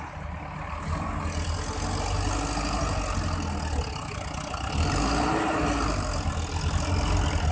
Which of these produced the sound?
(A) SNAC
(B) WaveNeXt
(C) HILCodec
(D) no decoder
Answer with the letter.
D